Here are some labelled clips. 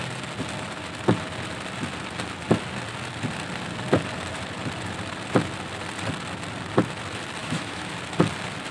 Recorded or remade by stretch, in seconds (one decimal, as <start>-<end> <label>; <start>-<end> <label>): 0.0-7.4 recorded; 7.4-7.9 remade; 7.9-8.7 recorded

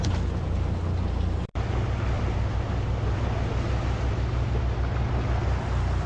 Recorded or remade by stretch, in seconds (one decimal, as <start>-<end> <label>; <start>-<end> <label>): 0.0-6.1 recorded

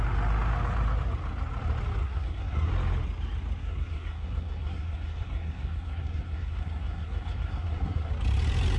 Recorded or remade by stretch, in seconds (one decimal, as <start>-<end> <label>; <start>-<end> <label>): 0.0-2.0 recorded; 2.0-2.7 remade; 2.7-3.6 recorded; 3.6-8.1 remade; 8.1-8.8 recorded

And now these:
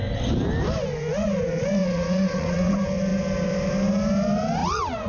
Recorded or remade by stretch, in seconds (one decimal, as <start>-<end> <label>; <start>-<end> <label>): 0.0-1.8 recorded; 1.8-2.7 remade; 2.7-4.6 recorded; 4.6-5.1 remade